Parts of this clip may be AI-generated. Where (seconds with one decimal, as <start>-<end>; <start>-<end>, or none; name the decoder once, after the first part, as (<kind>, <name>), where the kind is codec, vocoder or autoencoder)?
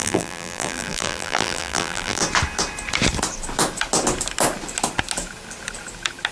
0.0-2.2 (vocoder, BigVGAN v2)